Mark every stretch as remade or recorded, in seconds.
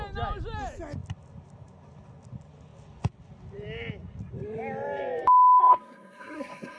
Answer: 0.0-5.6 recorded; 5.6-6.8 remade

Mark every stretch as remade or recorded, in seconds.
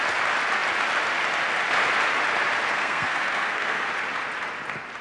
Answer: 0.0-2.7 recorded; 2.7-3.9 remade; 3.9-5.0 recorded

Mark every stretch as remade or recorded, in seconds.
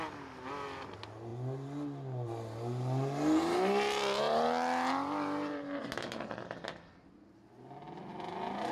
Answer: 0.0-8.7 recorded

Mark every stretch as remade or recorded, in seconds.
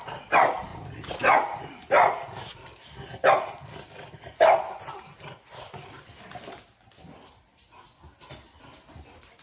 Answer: 0.0-9.4 recorded